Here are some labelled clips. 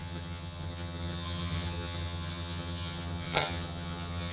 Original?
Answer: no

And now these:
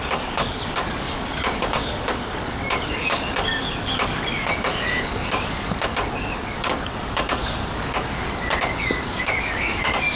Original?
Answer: no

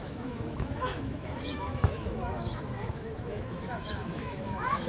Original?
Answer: no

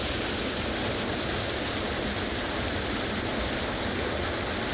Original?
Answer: yes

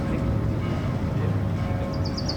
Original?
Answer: yes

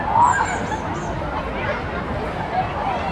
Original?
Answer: yes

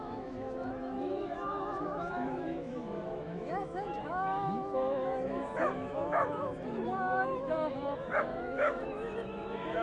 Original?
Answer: no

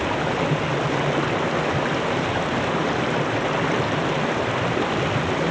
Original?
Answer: yes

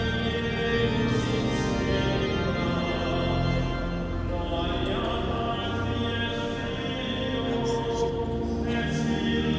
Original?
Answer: yes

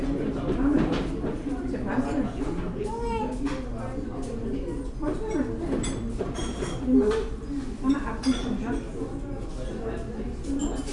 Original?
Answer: yes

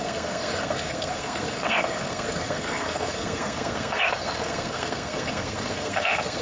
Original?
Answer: no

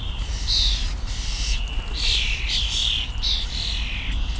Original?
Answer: yes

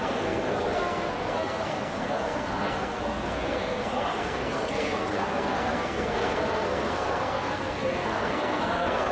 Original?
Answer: no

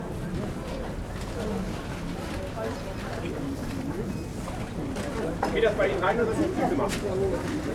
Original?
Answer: yes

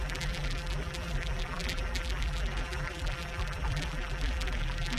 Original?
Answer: no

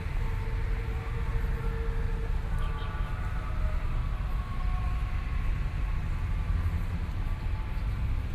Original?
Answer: yes